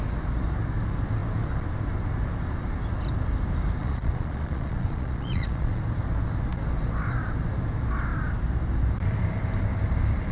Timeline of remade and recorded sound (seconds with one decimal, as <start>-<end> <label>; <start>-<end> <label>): 0.0-3.8 recorded; 3.8-5.8 remade; 5.8-10.3 recorded